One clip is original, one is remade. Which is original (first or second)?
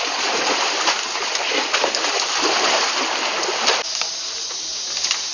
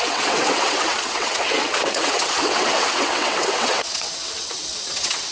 first